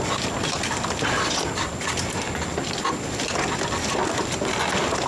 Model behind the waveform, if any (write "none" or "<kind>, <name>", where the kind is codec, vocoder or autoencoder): none